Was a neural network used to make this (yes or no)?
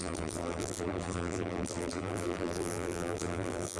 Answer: yes